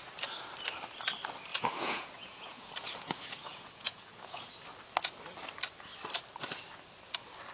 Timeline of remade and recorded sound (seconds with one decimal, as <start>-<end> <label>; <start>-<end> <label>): 0.0-1.5 recorded; 1.5-4.4 remade; 4.4-7.5 recorded